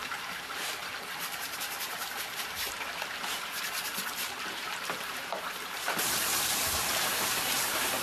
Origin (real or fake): fake